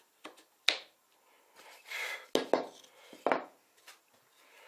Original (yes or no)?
yes